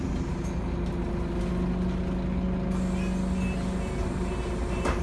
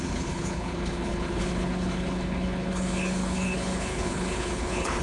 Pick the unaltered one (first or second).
first